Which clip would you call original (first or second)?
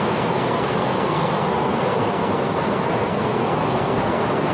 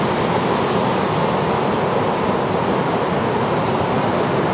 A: second